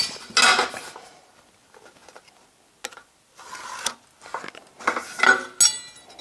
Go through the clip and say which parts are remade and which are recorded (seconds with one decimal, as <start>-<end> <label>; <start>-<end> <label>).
0.0-0.5 recorded; 0.5-1.3 remade; 1.3-6.2 recorded